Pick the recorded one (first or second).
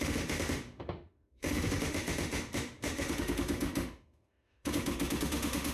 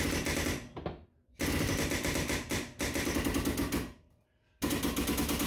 second